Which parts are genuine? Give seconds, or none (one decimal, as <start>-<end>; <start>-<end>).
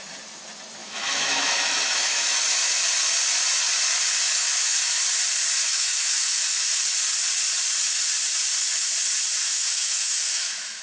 0.0-0.8; 2.4-4.4; 5.0-5.6; 6.8-9.4